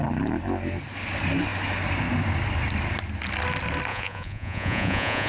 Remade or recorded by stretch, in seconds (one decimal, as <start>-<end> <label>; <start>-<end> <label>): 0.0-3.9 recorded; 3.9-5.3 remade